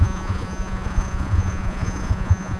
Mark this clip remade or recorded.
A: remade